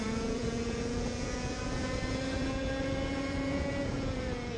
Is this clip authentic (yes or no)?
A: no